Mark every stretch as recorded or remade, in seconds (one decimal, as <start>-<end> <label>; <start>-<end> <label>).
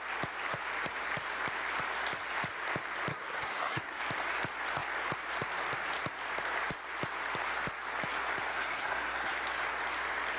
0.0-3.1 recorded; 3.1-4.0 remade; 4.0-8.5 recorded; 8.5-9.3 remade; 9.3-10.4 recorded